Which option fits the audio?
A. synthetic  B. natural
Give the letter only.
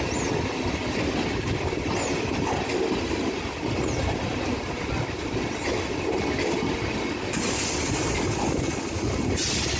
B